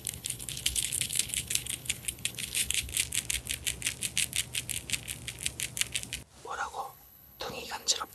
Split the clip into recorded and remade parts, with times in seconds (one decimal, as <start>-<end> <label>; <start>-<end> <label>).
0.0-2.9 remade; 2.9-6.8 recorded; 6.8-8.1 remade